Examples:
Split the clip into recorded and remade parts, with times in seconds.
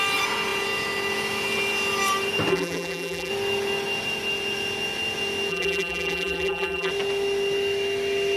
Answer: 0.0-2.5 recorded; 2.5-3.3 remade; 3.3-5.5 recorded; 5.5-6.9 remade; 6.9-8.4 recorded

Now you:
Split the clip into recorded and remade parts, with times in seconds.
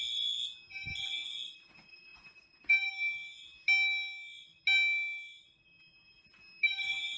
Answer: 0.0-7.2 recorded